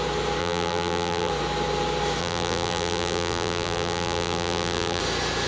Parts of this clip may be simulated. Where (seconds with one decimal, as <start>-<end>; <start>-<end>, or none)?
0.4-1.3; 2.2-5.0